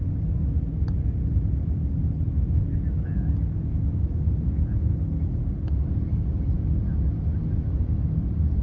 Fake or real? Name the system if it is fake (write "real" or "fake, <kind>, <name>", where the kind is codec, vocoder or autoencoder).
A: real